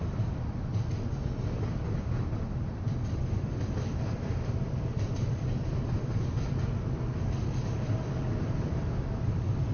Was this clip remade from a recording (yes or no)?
yes